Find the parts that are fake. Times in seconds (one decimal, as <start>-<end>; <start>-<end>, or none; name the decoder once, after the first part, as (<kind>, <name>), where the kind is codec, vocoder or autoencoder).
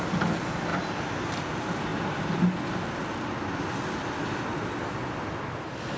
0.7-1.4 (vocoder, BigVGAN v2)